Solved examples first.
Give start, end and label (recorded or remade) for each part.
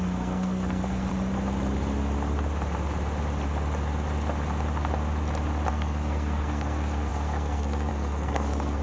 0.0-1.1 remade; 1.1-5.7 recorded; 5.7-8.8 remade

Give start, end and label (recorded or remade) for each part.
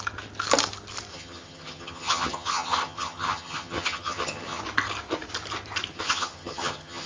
0.0-1.1 recorded; 1.1-4.6 remade; 4.6-5.9 recorded; 5.9-7.1 remade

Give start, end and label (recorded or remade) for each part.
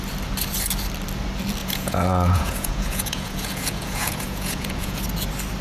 0.0-1.6 recorded; 1.6-5.0 remade; 5.0-5.6 recorded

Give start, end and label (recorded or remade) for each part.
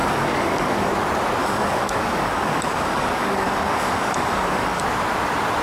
0.0-0.9 remade; 0.9-1.4 recorded; 1.4-4.8 remade; 4.8-5.6 recorded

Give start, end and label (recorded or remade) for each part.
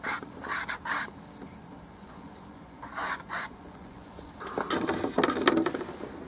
0.0-1.9 recorded; 1.9-4.3 remade; 4.3-6.3 recorded